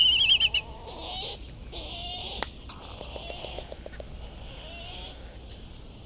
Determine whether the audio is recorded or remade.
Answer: recorded